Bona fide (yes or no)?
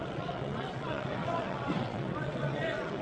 no